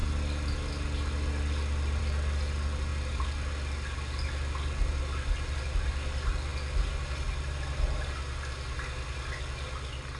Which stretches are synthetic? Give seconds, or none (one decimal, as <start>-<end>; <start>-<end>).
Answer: none